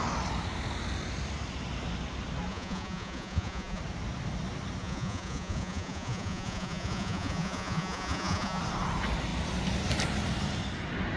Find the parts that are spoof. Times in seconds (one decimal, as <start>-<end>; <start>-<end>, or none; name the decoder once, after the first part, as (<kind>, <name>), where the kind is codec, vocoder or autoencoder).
2.5-3.8 (vocoder, Vocos); 4.8-8.6

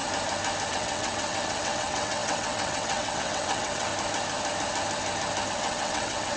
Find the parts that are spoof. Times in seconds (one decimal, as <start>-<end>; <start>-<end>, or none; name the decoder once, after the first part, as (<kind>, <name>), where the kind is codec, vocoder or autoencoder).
0.7-3.9 (vocoder, WaveNeXt); 5.5-6.4

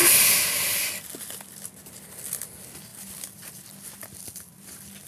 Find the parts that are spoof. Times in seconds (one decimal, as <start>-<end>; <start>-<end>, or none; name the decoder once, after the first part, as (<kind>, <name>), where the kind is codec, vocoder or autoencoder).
none

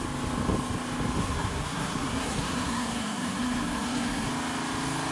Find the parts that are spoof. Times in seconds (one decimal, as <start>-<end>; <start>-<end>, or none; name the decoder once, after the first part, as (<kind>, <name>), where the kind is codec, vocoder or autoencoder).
1.2-4.3 (codec, SNAC)

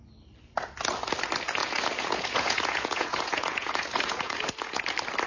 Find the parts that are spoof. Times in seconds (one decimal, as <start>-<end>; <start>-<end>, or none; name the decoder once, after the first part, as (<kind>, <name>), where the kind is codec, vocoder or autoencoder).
1.6-4.8 (vocoder, Vocos)

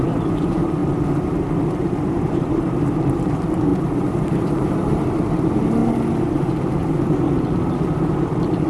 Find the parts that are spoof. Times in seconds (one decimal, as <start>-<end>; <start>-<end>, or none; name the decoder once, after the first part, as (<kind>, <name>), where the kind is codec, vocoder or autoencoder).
0.0-0.8 (vocoder, BigVGAN v2); 1.7-5.8; 6.3-8.7

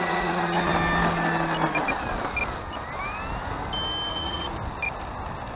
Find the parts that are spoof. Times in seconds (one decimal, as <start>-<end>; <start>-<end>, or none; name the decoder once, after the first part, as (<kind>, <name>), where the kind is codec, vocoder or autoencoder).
0.0-0.7 (vocoder, Vocos); 4.1-4.5